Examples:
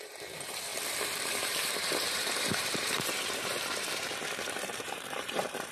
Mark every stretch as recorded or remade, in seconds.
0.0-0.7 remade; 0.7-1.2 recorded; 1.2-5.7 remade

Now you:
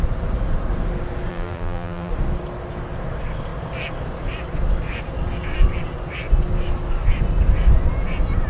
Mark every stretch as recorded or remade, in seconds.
0.0-1.3 recorded; 1.3-2.1 remade; 2.1-8.5 recorded

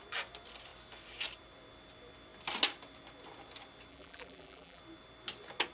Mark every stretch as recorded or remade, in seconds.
0.0-3.9 recorded; 3.9-4.8 remade; 4.8-5.7 recorded

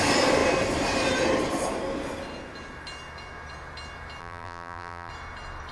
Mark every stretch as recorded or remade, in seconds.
0.0-4.2 recorded; 4.2-5.1 remade; 5.1-5.7 recorded

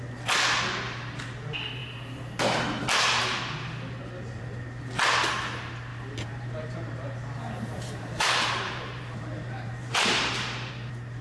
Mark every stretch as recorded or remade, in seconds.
0.0-5.9 recorded; 5.9-10.7 remade; 10.7-11.2 recorded

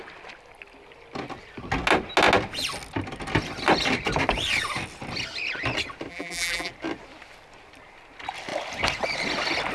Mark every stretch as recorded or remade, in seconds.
0.0-6.1 recorded; 6.1-6.7 remade; 6.7-9.7 recorded